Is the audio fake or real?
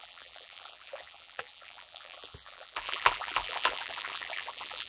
fake